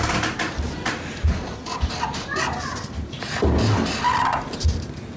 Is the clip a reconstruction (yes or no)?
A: no